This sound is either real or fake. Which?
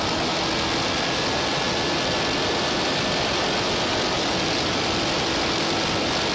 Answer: real